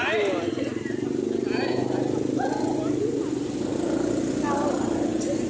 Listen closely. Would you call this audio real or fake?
real